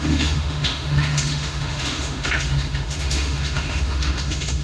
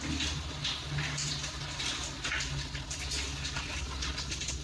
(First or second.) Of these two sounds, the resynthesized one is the first